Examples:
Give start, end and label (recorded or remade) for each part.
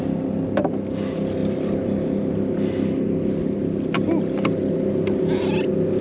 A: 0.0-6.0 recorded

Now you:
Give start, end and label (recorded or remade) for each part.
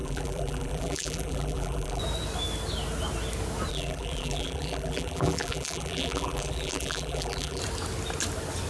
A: 0.0-2.0 remade; 2.0-3.7 recorded; 3.7-7.6 remade; 7.6-8.7 recorded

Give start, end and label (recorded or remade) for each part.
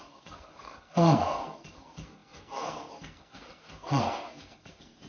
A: 0.0-5.1 remade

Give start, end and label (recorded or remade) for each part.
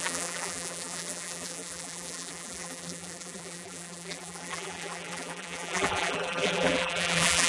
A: 0.0-7.5 remade